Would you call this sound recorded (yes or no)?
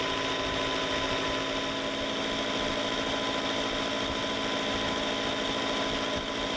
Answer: yes